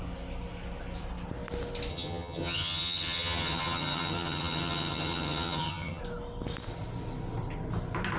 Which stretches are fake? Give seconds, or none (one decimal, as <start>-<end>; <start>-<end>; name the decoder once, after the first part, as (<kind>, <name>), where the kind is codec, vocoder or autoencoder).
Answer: 1.9-6.0 (vocoder, HiFi-GAN)